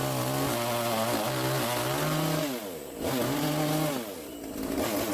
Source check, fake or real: real